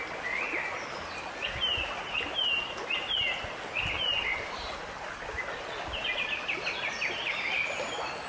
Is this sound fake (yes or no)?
no